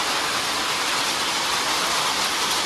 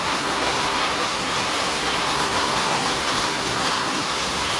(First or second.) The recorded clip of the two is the first